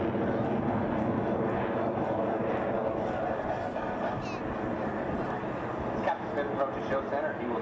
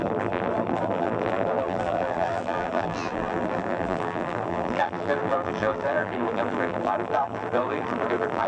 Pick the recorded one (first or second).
first